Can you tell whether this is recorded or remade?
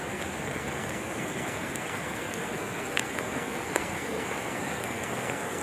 remade